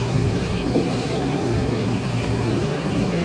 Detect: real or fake fake